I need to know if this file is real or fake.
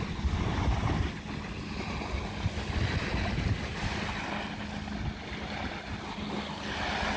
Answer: real